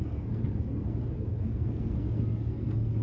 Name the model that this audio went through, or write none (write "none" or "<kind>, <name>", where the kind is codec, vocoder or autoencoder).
codec, SNAC